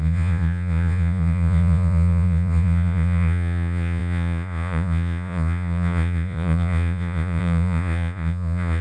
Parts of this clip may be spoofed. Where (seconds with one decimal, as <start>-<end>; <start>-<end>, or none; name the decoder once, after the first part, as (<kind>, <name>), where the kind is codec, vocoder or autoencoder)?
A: 0.0-8.8 (vocoder, Vocos)